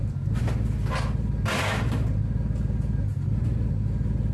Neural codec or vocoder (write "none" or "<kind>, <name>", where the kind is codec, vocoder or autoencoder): none